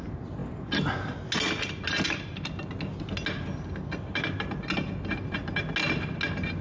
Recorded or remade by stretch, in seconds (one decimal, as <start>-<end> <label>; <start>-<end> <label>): 0.0-6.6 recorded